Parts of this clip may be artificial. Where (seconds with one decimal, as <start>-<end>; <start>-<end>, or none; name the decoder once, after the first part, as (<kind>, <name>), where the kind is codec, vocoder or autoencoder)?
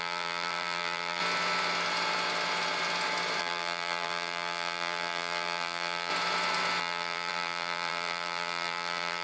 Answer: 0.0-1.2 (vocoder, BigVGAN v2); 3.4-6.1; 6.8-9.2